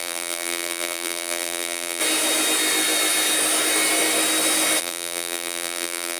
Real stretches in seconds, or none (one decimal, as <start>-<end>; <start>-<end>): 2.0-4.8